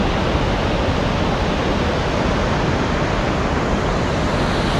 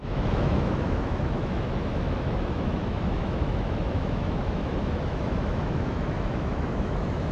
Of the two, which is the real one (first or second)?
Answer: first